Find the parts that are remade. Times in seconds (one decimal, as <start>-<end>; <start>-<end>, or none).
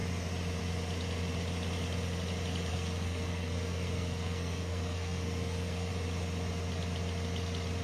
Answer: 2.7-5.9